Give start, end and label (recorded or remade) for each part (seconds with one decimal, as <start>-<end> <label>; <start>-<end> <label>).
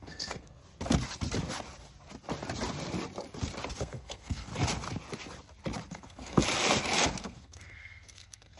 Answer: 0.0-0.6 remade; 0.6-3.8 recorded; 3.8-4.5 remade; 4.5-5.9 recorded; 5.9-6.4 remade; 6.4-7.2 recorded; 7.2-8.6 remade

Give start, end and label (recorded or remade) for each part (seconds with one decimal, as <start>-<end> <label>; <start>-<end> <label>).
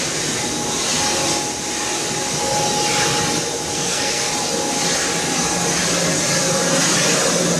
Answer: 0.0-3.7 recorded; 3.7-4.3 remade; 4.3-7.6 recorded